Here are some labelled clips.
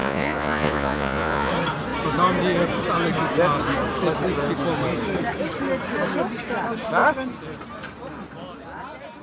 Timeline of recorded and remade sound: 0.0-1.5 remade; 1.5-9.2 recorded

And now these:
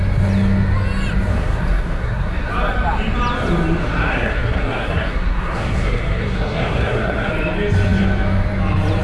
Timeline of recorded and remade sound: 0.0-1.3 recorded; 1.3-2.5 remade; 2.5-3.8 recorded; 3.8-7.3 remade; 7.3-9.0 recorded

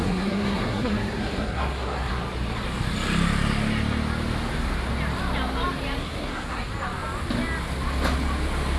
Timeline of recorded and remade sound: 0.0-2.1 remade; 2.1-6.0 recorded; 6.0-6.6 remade; 6.6-8.8 recorded